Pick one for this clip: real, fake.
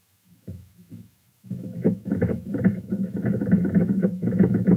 fake